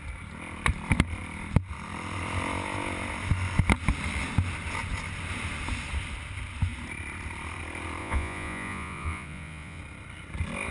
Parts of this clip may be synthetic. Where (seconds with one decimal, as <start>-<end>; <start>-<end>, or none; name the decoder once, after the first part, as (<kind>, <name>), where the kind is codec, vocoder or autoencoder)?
8.0-9.8 (vocoder, Vocos)